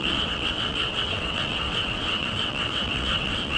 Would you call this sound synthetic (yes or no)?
yes